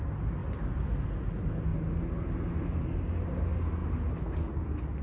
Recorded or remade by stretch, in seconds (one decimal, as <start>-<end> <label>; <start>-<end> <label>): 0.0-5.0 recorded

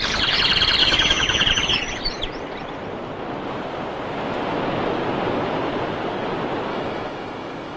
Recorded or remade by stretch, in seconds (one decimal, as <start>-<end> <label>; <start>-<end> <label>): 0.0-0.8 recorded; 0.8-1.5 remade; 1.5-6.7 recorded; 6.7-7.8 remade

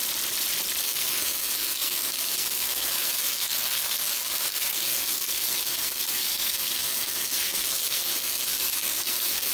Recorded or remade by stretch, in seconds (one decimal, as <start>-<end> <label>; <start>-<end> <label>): 0.0-0.8 recorded; 0.8-9.5 remade

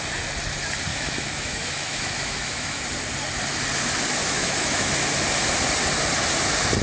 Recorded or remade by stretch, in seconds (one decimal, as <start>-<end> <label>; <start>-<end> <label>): 0.0-0.9 recorded; 0.9-2.8 remade; 2.8-4.2 recorded; 4.2-4.9 remade; 4.9-6.8 recorded